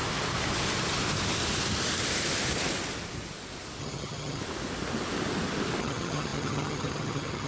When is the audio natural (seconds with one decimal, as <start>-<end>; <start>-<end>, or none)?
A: 0.0-3.8; 4.4-5.8